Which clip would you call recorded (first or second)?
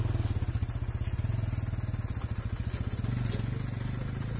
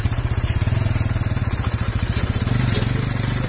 first